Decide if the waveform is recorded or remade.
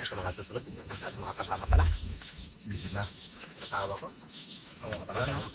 remade